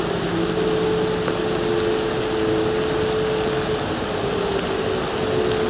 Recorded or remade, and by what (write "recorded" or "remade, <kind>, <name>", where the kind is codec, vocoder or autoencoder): recorded